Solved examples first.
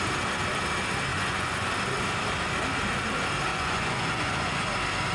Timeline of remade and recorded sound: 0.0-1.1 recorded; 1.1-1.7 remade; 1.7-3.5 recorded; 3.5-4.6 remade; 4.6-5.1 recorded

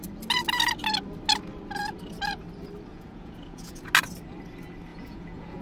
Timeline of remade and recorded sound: 0.0-2.9 recorded; 2.9-3.9 remade; 3.9-4.9 recorded; 4.9-5.6 remade

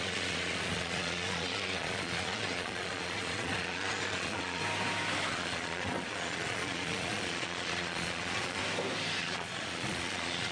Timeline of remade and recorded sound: 0.0-4.6 remade; 4.6-5.3 recorded; 5.3-8.6 remade; 8.6-9.2 recorded; 9.2-10.5 remade

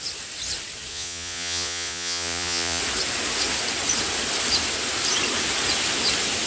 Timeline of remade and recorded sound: 0.0-0.9 recorded; 0.9-2.8 remade; 2.8-6.5 recorded